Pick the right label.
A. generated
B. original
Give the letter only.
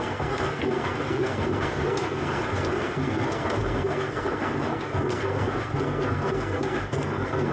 A